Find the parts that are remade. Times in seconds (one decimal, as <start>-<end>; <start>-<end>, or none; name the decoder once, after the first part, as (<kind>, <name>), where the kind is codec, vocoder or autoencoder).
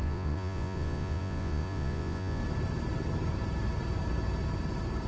0.0-2.4 (vocoder, Vocos)